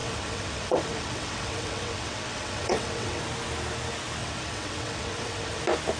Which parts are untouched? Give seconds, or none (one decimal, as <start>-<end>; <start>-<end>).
3.2-4.2; 5.6-6.0